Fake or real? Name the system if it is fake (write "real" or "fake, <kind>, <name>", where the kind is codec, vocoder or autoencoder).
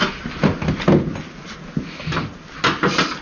real